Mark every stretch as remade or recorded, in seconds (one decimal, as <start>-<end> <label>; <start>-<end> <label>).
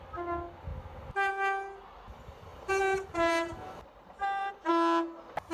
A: 0.0-0.7 recorded; 0.7-1.3 remade; 1.3-2.5 recorded; 2.5-4.7 remade; 4.7-5.5 recorded